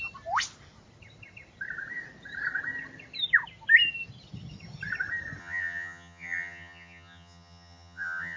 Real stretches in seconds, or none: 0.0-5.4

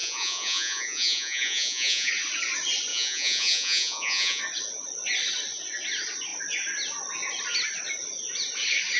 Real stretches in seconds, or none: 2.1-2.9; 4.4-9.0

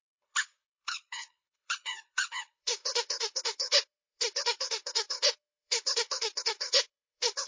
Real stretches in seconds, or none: none

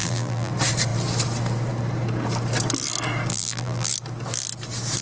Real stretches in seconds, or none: 0.5-3.3; 3.9-5.0